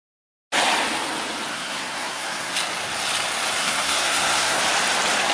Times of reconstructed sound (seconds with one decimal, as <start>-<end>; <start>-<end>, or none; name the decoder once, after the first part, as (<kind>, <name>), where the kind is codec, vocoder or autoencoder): 1.5-2.5 (codec, SNAC); 3.6-4.6